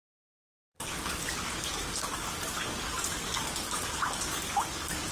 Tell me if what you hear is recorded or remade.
remade